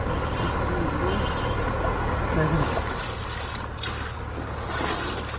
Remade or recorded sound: recorded